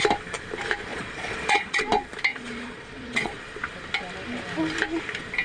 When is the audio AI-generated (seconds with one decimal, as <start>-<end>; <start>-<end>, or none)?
0.9-1.8; 2.3-3.4